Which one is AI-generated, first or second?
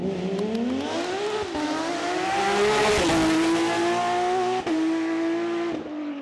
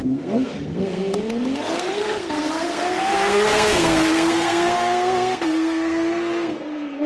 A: second